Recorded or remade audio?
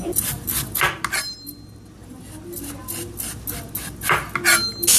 recorded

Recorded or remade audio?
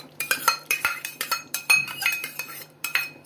remade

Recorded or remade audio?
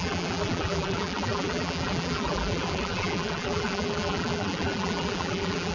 remade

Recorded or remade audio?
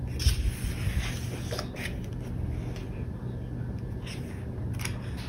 recorded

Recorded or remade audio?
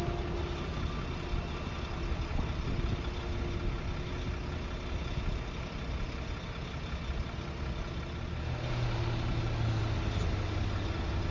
recorded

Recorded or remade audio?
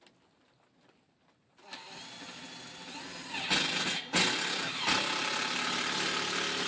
recorded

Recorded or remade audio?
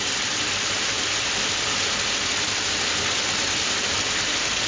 remade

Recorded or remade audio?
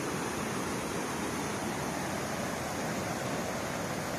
recorded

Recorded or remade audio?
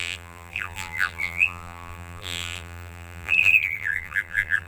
remade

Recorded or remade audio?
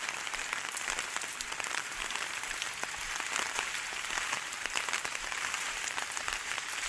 remade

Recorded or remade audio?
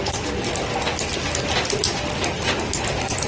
recorded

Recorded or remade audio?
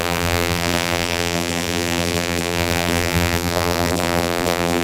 remade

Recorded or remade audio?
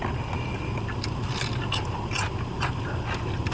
recorded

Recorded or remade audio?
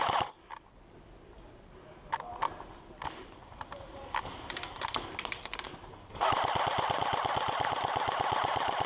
remade